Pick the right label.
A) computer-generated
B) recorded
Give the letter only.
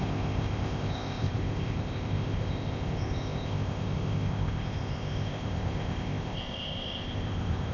A